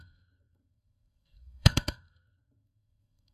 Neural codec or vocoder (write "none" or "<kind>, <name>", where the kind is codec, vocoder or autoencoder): codec, SNAC